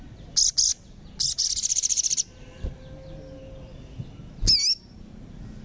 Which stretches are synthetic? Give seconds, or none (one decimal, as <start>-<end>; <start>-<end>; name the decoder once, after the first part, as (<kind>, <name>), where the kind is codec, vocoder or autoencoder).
none